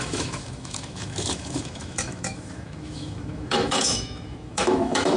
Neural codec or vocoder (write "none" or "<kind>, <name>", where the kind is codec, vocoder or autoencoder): autoencoder, DAC-VAE